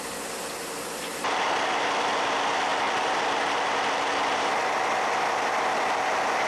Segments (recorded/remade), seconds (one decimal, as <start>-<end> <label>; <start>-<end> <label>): 0.0-6.5 recorded